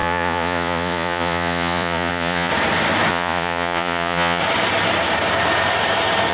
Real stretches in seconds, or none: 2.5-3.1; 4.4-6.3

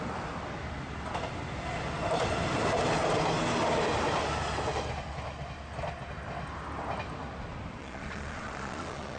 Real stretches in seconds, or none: 0.0-7.8